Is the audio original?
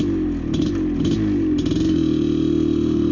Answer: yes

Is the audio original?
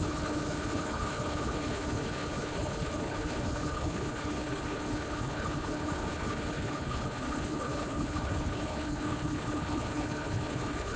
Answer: no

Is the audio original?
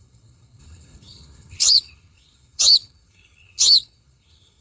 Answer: no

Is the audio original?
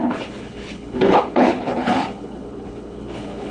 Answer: no